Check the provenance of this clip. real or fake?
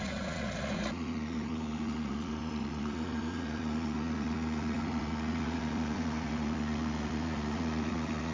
fake